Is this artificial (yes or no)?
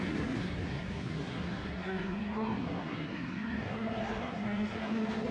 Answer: yes